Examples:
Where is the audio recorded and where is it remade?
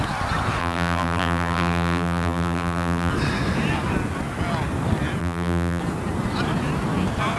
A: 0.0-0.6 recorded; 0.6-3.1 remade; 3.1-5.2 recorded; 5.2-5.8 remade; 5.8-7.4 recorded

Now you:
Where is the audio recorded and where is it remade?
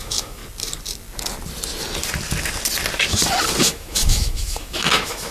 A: 0.0-0.4 remade; 0.4-3.6 recorded; 3.6-5.3 remade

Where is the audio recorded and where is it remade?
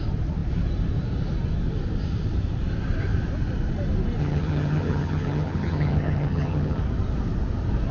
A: 0.0-4.2 recorded; 4.2-6.8 remade; 6.8-7.9 recorded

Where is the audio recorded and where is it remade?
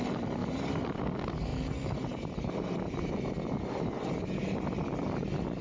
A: 0.0-0.4 recorded; 0.4-1.0 remade; 1.0-1.5 recorded; 1.5-4.1 remade; 4.1-5.6 recorded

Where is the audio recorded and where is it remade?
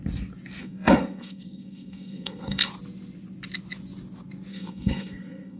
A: 0.0-0.6 recorded; 0.6-2.7 remade; 2.7-4.5 recorded; 4.5-5.6 remade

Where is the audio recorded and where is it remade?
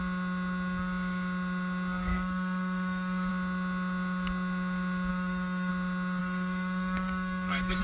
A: 0.0-2.1 recorded; 2.1-3.3 remade; 3.3-5.1 recorded; 5.1-5.7 remade; 5.7-6.2 recorded; 6.2-7.8 remade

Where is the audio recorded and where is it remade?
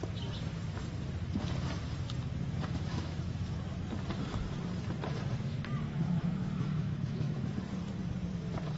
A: 0.0-2.9 recorded; 2.9-3.6 remade; 3.6-6.0 recorded; 6.0-7.5 remade; 7.5-8.8 recorded